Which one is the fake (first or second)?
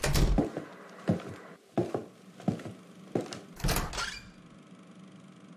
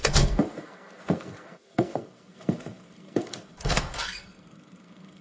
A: second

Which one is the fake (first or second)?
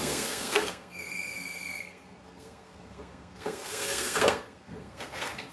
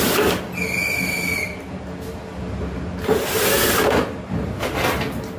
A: first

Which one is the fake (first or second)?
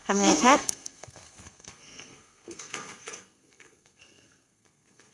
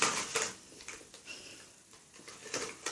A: first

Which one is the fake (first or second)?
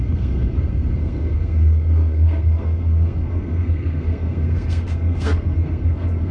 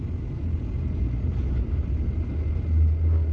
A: first